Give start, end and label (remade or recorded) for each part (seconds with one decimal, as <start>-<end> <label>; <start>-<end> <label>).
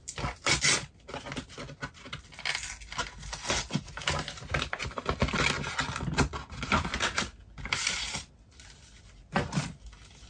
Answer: 0.0-10.3 recorded